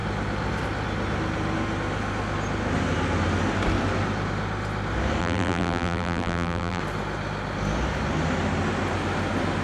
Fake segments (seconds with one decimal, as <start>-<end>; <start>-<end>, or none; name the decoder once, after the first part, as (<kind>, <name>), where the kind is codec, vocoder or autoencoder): 5.2-6.8 (vocoder, BigVGAN v2)